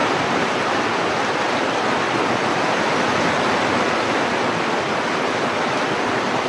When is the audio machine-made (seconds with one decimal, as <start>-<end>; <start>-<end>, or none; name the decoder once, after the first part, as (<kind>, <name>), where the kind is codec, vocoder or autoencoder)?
none